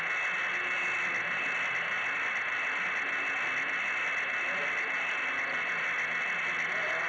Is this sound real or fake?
real